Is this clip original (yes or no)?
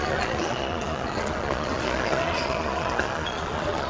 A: no